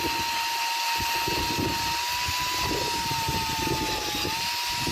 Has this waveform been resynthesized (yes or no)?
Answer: no